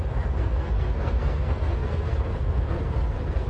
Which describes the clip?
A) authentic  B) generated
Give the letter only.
B